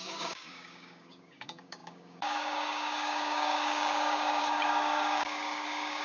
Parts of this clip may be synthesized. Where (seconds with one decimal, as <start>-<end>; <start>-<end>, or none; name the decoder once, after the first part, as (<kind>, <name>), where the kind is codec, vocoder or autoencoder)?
0.0-6.0 (codec, DAC)